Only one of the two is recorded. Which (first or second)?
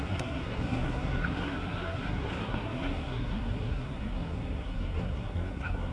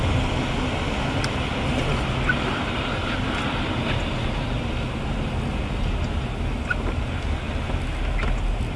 second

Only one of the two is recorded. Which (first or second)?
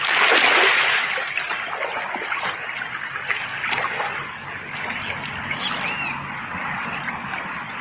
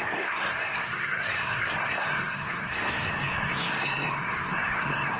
first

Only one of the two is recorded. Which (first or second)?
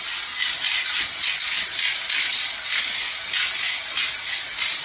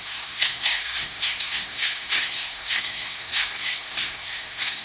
first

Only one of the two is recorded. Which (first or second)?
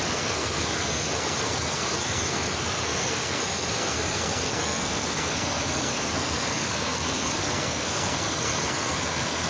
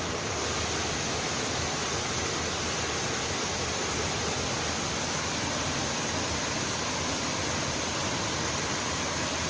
second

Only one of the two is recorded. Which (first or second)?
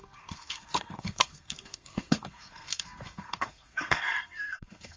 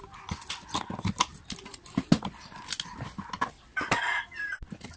second